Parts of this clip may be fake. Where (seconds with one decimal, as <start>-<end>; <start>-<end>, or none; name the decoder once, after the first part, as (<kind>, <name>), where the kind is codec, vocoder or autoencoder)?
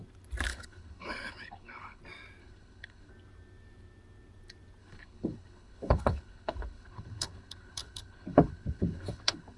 0.5-2.0 (codec, HILCodec); 2.4-3.1; 4.8-9.6